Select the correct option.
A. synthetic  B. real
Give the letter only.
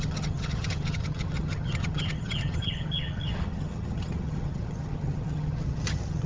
A